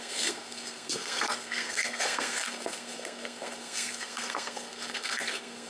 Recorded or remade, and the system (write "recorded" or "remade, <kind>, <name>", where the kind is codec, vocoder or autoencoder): remade, codec, SNAC